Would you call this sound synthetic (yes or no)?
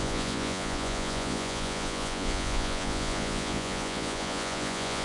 yes